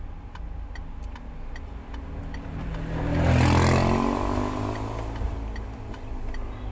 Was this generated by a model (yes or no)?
no